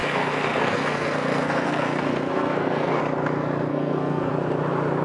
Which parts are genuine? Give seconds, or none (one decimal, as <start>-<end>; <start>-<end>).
3.0-3.7; 4.3-5.0